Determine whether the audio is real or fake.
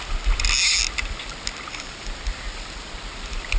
real